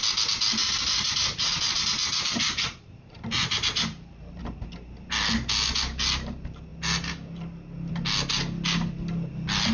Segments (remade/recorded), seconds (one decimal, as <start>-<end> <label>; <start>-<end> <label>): 0.0-0.6 recorded; 0.6-4.4 remade; 4.4-9.7 recorded